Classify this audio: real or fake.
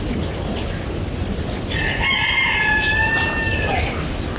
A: real